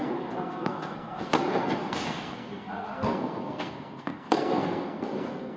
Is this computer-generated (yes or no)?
yes